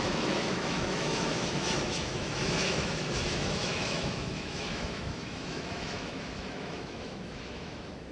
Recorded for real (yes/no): no